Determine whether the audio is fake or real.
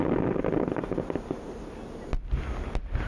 real